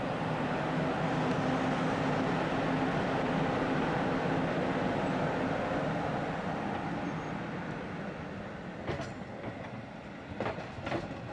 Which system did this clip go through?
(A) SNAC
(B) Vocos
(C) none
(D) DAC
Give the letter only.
C